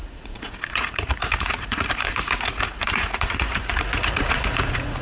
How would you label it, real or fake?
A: fake